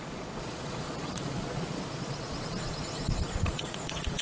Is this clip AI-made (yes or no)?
yes